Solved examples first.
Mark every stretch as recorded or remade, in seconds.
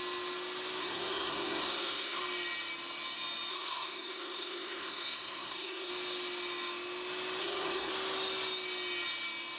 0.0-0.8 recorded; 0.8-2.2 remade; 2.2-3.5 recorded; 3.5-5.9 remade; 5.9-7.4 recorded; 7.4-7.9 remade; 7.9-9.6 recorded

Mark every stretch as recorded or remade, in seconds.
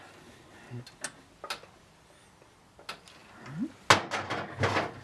0.0-5.0 recorded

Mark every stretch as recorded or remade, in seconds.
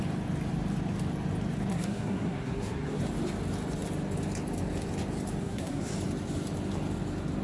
0.0-1.7 recorded; 1.7-3.0 remade; 3.0-5.4 recorded; 5.4-5.9 remade; 5.9-7.4 recorded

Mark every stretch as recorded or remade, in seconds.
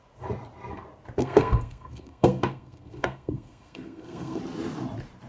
0.0-1.2 recorded; 1.2-4.4 remade; 4.4-5.3 recorded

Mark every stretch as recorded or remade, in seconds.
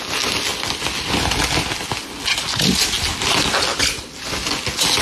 0.0-5.0 recorded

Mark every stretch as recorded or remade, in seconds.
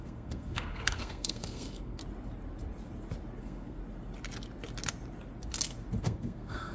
0.0-2.0 remade; 2.0-3.4 recorded; 3.4-3.8 remade; 3.8-6.0 recorded; 6.0-6.7 remade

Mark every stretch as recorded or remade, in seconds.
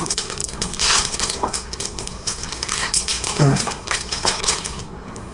0.0-5.3 remade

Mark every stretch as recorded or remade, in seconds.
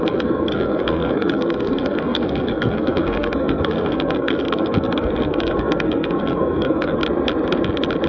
0.0-7.0 remade; 7.0-8.1 recorded